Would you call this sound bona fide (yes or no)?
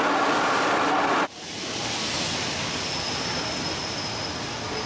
yes